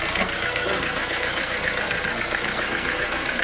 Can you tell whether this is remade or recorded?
remade